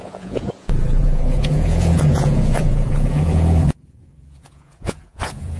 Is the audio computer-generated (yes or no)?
yes